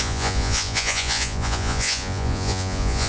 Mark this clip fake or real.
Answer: fake